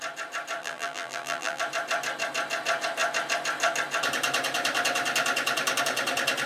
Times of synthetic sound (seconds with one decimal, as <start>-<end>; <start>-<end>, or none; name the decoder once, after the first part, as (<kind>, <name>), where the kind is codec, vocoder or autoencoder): 0.6-1.6 (vocoder, BigVGAN v2)